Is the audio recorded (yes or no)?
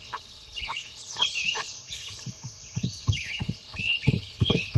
no